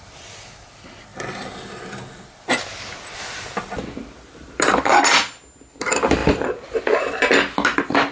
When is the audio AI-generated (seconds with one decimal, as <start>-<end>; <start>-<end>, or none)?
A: 4.0-4.7; 6.2-7.1